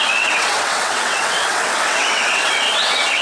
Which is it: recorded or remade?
remade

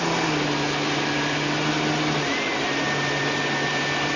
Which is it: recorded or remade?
recorded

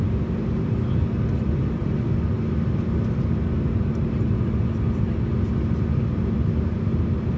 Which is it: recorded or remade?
recorded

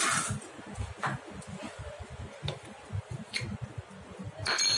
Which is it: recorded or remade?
recorded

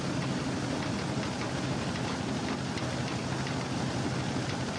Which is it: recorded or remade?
recorded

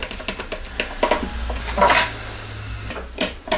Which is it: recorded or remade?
recorded